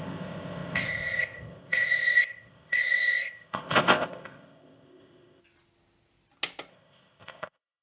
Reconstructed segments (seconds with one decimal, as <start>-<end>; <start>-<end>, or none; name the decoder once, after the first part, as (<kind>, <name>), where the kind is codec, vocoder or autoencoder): 0.0-5.4 (codec, ZipCodec); 6.7-7.8